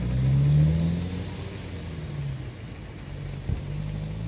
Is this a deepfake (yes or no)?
no